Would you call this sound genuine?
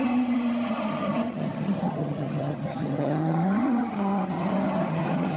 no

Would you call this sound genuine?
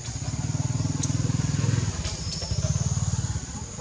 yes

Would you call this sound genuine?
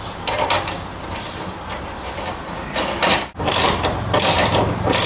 yes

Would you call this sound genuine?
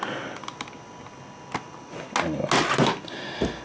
yes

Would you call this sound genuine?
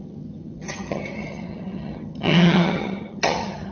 no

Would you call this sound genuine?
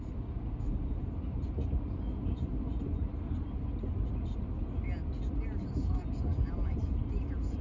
yes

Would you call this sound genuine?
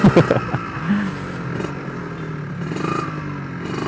yes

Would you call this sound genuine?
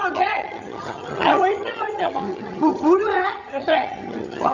no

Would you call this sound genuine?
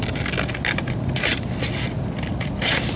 yes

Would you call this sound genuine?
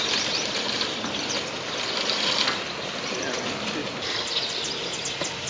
yes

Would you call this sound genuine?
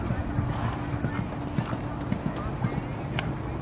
yes